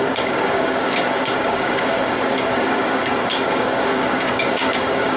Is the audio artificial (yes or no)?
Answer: yes